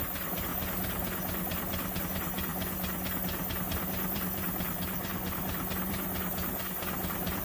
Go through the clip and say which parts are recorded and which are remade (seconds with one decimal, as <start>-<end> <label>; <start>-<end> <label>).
0.0-0.5 remade; 0.5-2.0 recorded; 2.0-2.5 remade; 2.5-3.6 recorded; 3.6-7.4 remade